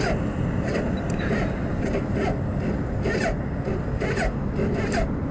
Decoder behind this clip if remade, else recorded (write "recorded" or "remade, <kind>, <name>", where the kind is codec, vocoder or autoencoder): recorded